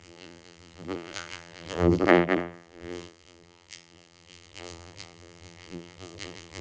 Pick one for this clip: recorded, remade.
remade